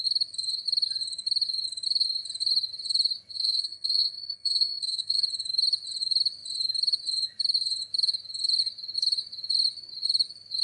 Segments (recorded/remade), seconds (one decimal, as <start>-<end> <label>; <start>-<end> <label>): 0.0-3.3 recorded; 3.3-5.2 remade; 5.2-10.6 recorded